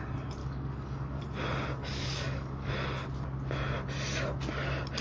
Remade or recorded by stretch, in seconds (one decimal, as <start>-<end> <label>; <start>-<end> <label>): 0.0-0.4 recorded; 0.4-1.2 remade; 1.2-1.8 recorded; 1.8-2.7 remade; 2.7-5.0 recorded